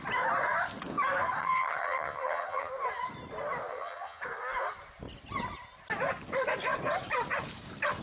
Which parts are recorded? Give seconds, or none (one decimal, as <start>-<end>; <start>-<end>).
0.0-1.4; 2.7-3.7; 4.2-8.0